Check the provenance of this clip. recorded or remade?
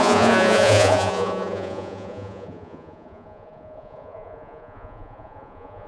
remade